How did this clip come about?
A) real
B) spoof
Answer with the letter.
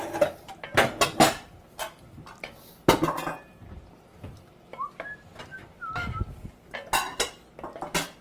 A